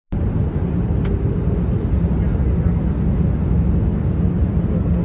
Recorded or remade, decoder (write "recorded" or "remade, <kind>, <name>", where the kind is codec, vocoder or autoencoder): recorded